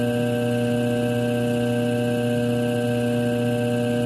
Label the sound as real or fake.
real